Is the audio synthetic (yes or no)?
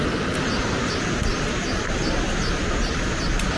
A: no